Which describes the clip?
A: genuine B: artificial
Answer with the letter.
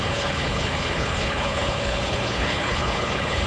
B